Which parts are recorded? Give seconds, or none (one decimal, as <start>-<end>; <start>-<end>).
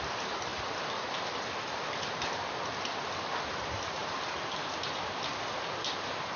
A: 0.0-0.5; 3.1-4.0; 4.7-6.4